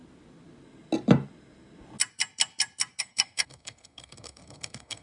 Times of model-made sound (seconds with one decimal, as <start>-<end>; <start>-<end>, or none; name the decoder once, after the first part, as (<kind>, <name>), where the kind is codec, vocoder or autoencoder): 3.0-5.0 (codec, SNAC)